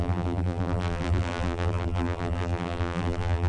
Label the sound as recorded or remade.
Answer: remade